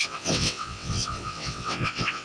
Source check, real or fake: fake